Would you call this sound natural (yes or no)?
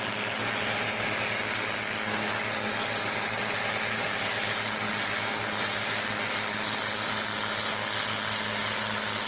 yes